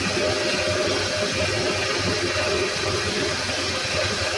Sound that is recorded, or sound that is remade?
recorded